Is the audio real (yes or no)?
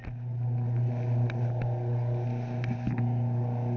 yes